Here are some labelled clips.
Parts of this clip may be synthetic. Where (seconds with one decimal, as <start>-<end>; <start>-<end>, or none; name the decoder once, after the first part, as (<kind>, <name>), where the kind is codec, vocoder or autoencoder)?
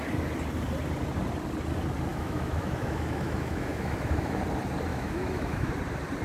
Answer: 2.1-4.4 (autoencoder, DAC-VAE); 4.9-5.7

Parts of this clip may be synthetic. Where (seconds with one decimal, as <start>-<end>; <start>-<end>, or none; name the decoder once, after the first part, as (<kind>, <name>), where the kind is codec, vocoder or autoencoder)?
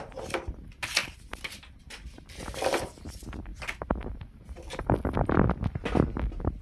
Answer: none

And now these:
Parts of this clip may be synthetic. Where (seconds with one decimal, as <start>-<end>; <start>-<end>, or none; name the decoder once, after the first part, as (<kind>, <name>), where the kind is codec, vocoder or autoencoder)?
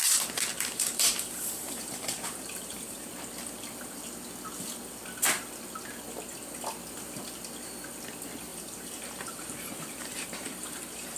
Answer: 0.5-3.1 (vocoder, BigVGAN v2); 8.5-11.2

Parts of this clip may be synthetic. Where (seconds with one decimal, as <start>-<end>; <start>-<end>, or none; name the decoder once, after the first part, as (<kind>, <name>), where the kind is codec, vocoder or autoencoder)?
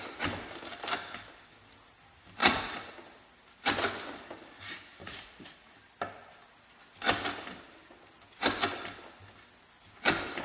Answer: 2.4-2.9 (vocoder, Vocos); 5.0-5.8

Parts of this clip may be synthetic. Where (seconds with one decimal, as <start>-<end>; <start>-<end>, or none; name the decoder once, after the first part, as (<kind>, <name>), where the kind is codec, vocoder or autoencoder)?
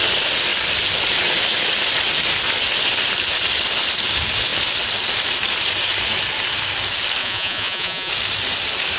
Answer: 7.2-8.1 (vocoder, Vocos)